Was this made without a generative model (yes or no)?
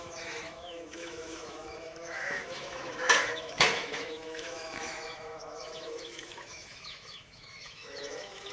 no